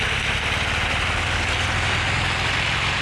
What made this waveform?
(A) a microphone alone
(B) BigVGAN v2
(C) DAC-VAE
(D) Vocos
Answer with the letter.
A